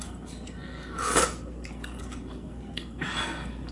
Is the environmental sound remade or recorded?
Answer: remade